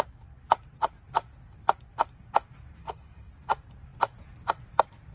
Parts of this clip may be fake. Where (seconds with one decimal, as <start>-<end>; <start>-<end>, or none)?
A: 2.8-3.3